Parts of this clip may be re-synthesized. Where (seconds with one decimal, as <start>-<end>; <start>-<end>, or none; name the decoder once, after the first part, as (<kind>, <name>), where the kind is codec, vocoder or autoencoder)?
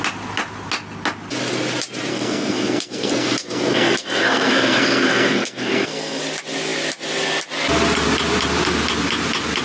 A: 2.1-6.2 (codec, SNAC)